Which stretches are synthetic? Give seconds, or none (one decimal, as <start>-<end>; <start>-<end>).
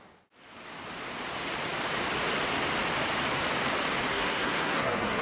4.1-5.2